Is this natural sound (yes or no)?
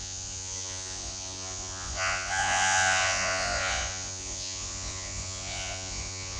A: no